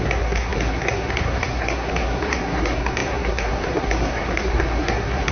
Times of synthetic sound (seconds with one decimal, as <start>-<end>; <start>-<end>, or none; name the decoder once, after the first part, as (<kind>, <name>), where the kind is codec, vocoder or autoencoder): 0.0-5.3 (codec, SNAC)